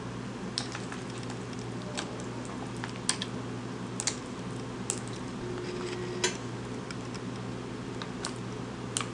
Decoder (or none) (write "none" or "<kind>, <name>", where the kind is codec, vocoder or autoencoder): none